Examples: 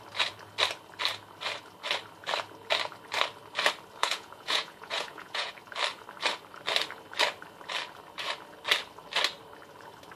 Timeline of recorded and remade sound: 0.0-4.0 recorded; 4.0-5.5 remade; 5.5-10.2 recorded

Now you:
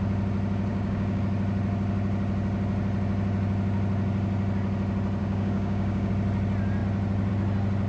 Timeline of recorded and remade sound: 0.0-0.7 recorded; 0.7-1.2 remade; 1.2-5.2 recorded; 5.2-6.1 remade; 6.1-7.9 recorded

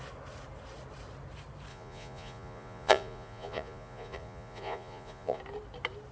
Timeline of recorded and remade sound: 0.0-1.7 recorded; 1.7-5.4 remade; 5.4-6.1 recorded

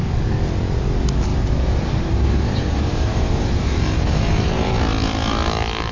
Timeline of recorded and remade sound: 0.0-1.3 recorded; 1.3-4.8 remade; 4.8-5.9 recorded